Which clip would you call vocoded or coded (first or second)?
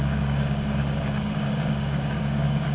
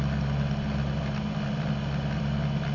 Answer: first